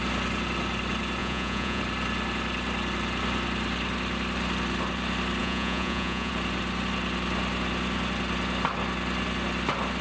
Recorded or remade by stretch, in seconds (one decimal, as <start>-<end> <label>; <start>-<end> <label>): 0.0-1.2 recorded; 1.2-1.8 remade; 1.8-5.4 recorded; 5.4-6.3 remade; 6.3-10.0 recorded